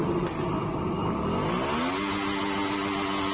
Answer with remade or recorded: recorded